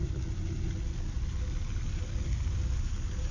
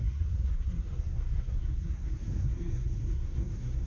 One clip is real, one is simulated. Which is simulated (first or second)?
second